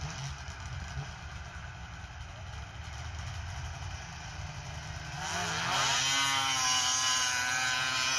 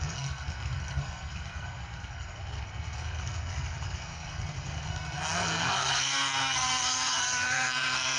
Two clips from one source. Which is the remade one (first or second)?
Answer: second